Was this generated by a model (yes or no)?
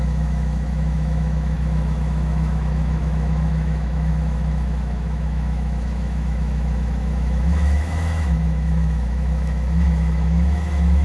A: yes